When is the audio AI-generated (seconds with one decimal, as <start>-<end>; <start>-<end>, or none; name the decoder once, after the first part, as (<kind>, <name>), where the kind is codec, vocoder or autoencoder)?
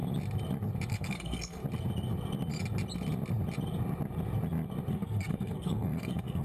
0.9-1.6 (codec, SNAC); 4.9-6.4